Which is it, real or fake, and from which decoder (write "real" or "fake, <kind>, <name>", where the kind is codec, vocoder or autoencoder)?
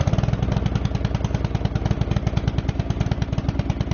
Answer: real